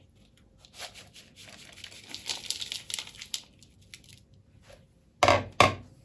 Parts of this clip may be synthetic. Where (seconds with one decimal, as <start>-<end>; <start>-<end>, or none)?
none